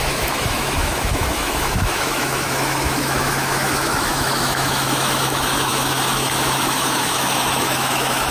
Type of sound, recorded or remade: remade